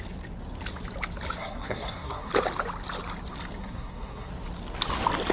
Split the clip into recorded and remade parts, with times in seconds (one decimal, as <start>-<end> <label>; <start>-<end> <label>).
0.0-1.4 recorded; 1.4-2.3 remade; 2.3-3.6 recorded; 3.6-4.3 remade; 4.3-5.3 recorded